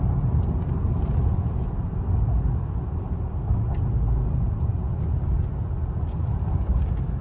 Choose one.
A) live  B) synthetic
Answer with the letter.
A